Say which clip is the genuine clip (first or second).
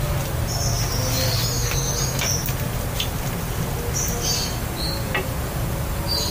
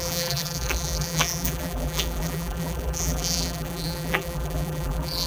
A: first